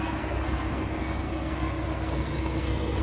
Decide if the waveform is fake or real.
fake